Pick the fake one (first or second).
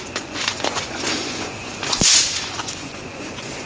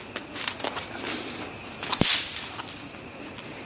first